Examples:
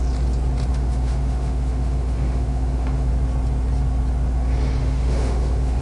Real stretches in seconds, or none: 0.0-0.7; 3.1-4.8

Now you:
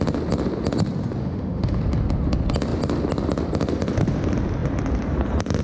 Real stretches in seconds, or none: 0.0-1.2; 1.8-5.6

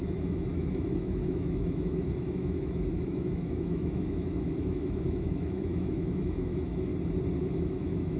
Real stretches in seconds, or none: 6.9-7.4

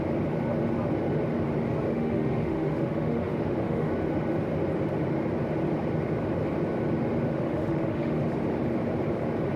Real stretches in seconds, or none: 0.0-1.9; 3.9-7.3; 8.2-9.6

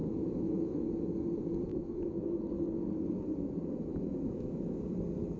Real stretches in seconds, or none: 0.9-1.7; 2.4-3.9; 4.8-5.4

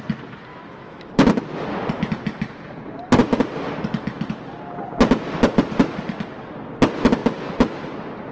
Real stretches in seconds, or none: 0.0-0.5; 1.1-8.3

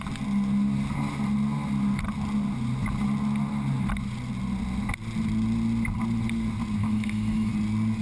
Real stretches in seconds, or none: 0.0-6.8; 7.5-8.0

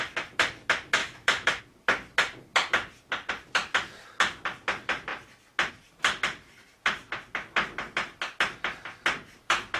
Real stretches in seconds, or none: 0.0-1.0; 1.6-9.8